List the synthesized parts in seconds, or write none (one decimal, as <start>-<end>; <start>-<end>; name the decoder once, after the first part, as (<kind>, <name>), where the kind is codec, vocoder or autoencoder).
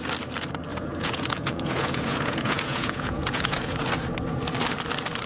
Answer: 0.7-3.9 (vocoder, Vocos)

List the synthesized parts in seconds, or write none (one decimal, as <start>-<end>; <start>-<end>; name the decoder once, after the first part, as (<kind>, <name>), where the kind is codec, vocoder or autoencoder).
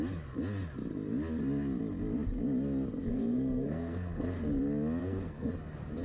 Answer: 3.1-4.6 (codec, SNAC); 5.0-5.5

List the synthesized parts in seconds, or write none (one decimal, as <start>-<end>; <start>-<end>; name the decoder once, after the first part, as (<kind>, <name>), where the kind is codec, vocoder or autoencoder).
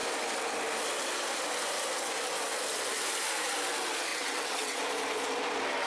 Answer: 4.1-4.8 (vocoder, WaveNeXt)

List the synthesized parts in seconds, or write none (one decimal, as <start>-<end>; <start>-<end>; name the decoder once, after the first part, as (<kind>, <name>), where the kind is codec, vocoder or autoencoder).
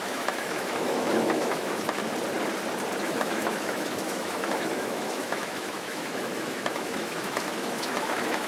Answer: 0.0-2.0 (autoencoder, DAC-VAE); 3.0-8.5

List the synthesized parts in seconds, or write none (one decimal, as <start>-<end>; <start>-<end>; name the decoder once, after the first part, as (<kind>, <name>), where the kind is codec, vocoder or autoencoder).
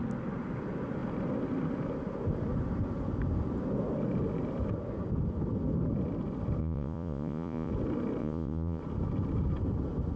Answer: 6.6-7.7 (vocoder, Vocos); 8.2-8.8